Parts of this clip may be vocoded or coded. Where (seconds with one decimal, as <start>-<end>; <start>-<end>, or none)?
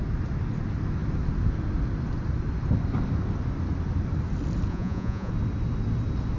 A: 4.7-5.3